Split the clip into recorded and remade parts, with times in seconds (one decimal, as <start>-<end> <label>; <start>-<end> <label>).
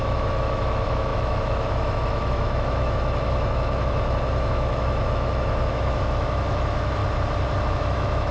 0.0-7.0 remade; 7.0-7.7 recorded; 7.7-8.3 remade